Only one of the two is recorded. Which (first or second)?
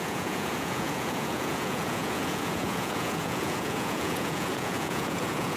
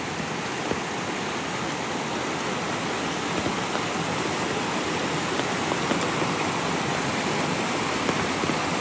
second